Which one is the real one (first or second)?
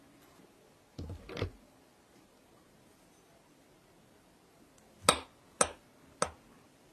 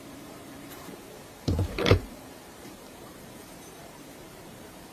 first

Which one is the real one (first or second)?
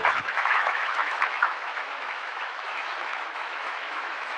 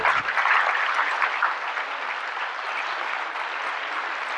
second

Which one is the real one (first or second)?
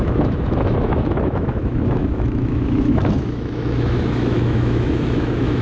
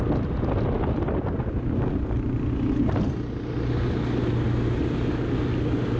second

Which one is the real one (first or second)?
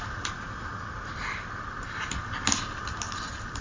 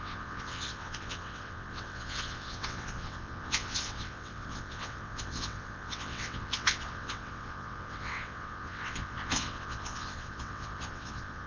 first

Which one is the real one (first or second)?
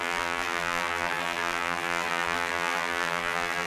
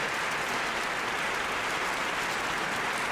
second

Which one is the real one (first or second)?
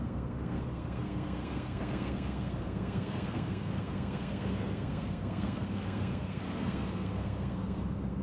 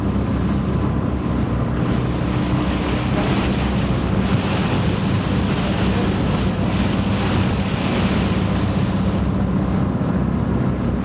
second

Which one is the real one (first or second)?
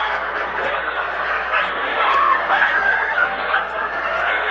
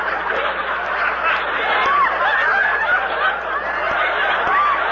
second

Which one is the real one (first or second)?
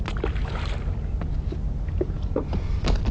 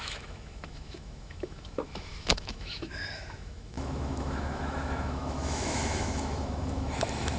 first